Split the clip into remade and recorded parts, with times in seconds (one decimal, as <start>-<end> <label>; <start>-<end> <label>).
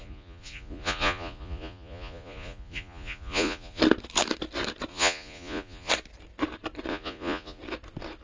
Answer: 0.0-3.8 remade; 3.8-4.9 recorded; 4.9-5.9 remade; 5.9-6.9 recorded; 6.9-7.6 remade; 7.6-8.2 recorded